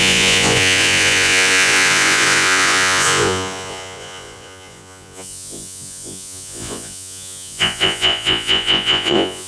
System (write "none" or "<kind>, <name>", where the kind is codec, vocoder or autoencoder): vocoder, Vocos